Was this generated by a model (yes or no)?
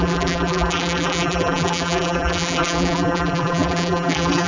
yes